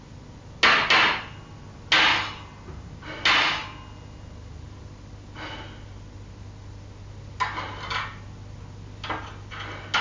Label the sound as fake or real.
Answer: real